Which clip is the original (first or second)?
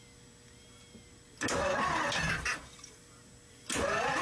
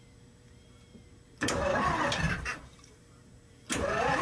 first